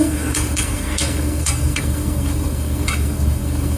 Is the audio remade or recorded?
remade